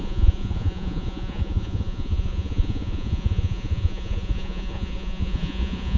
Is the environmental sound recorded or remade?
remade